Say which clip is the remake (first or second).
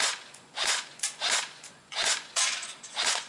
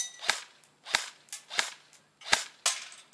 first